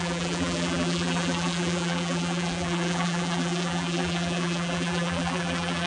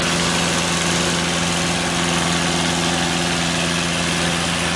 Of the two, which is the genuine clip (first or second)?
second